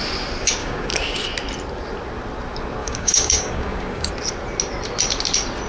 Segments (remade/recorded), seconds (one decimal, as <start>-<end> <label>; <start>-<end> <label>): 0.0-0.6 recorded; 0.6-1.2 remade; 1.2-2.8 recorded; 2.8-4.1 remade; 4.1-5.7 recorded

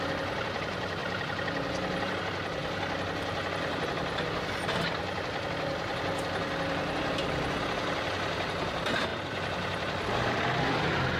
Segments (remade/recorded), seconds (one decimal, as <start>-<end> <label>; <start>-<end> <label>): 0.0-11.2 recorded

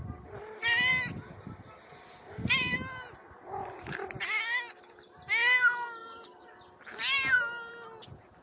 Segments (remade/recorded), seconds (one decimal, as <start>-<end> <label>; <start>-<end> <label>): 0.0-8.4 recorded

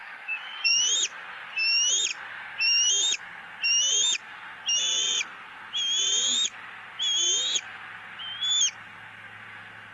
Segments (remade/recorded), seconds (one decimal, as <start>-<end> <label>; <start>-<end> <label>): 0.0-0.8 remade; 0.8-9.9 recorded

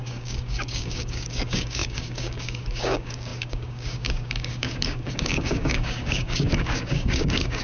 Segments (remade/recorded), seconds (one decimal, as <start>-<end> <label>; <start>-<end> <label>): 0.0-7.6 remade

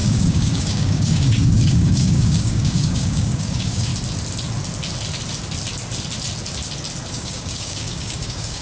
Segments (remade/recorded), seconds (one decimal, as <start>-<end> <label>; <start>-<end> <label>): 0.0-3.9 remade; 3.9-7.1 recorded; 7.1-8.6 remade

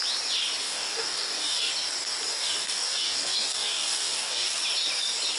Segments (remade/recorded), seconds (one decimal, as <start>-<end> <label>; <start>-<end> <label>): 0.0-0.6 recorded; 0.6-1.7 remade; 1.7-2.3 recorded; 2.3-4.5 remade; 4.5-5.4 recorded

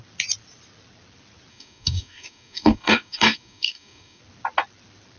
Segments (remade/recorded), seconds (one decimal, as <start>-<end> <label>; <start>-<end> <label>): 0.0-1.5 recorded; 1.5-4.2 remade; 4.2-5.2 recorded